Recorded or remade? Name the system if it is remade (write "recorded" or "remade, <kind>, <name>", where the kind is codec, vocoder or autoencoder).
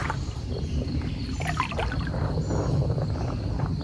recorded